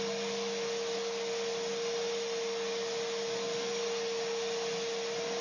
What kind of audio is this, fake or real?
real